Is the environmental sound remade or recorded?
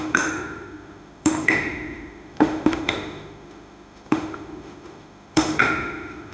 remade